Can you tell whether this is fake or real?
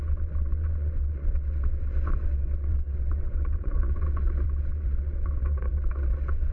fake